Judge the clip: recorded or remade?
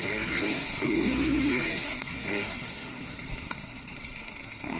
remade